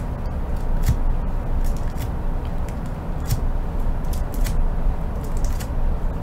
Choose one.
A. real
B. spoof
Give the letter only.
A